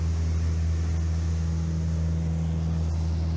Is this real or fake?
real